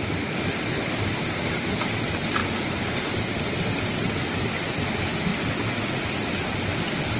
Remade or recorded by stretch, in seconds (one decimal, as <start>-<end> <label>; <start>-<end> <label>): 0.0-7.2 recorded